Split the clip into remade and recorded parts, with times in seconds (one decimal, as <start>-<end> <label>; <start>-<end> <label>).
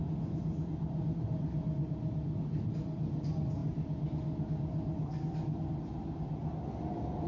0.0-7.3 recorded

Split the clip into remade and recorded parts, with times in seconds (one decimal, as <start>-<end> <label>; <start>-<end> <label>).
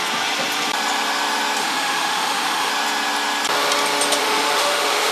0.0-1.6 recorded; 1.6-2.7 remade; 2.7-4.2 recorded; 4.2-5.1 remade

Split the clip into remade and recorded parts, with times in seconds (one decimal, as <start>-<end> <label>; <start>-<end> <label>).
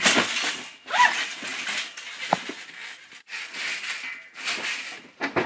0.0-5.5 recorded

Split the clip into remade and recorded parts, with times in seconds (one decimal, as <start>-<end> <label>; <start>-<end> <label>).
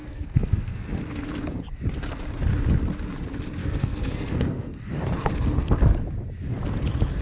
0.0-1.0 remade; 1.0-3.6 recorded; 3.6-4.8 remade; 4.8-7.2 recorded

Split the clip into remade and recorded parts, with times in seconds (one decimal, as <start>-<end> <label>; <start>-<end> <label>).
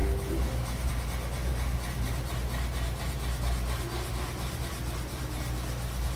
0.0-6.2 recorded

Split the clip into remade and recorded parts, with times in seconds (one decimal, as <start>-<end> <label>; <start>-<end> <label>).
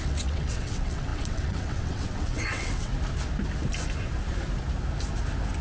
0.0-2.9 remade; 2.9-5.6 recorded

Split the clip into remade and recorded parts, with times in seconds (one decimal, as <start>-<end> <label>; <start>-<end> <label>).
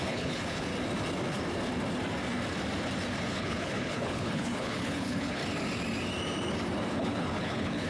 0.0-0.7 remade; 0.7-3.3 recorded; 3.3-5.4 remade; 5.4-6.9 recorded; 6.9-7.9 remade